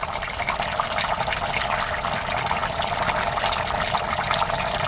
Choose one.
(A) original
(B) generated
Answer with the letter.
A